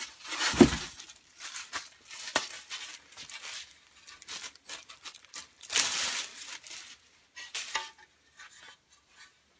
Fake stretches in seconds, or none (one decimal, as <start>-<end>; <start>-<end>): none